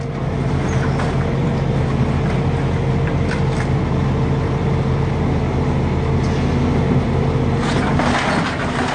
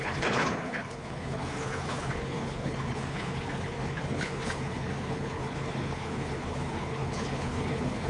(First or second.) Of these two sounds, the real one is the first